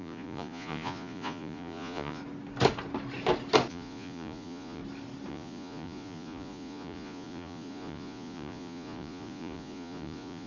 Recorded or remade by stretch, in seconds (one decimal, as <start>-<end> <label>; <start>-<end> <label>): 0.0-2.2 remade; 2.2-3.7 recorded; 3.7-4.8 remade; 4.8-5.3 recorded; 5.3-10.5 remade